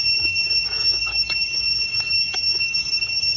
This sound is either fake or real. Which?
fake